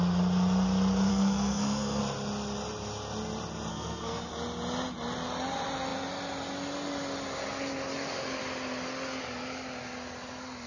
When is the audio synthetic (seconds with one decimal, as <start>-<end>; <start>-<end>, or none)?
1.1-2.0; 3.7-4.3